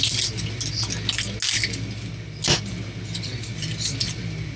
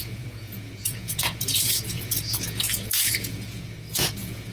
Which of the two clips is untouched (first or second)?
first